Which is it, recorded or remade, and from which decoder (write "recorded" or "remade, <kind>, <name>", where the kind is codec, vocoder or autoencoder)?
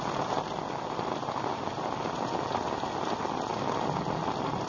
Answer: recorded